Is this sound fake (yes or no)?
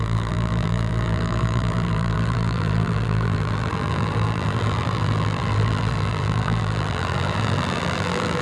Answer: yes